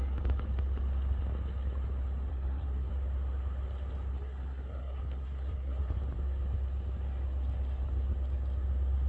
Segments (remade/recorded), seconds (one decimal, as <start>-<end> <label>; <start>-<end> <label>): 0.0-2.3 recorded; 2.3-2.9 remade; 2.9-4.1 recorded; 4.1-5.9 remade; 5.9-9.1 recorded